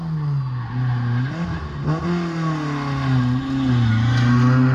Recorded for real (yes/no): yes